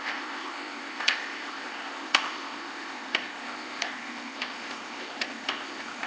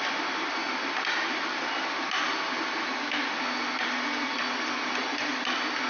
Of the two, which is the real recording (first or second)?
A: second